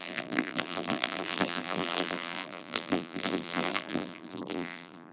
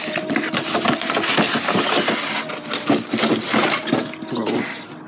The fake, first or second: first